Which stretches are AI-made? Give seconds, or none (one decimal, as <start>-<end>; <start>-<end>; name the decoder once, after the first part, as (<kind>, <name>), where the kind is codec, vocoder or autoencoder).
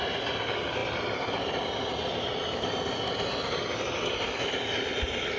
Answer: none